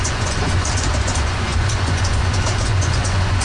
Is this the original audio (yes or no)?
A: no